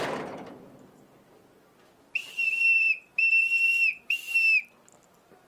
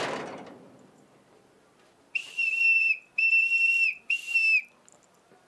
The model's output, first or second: second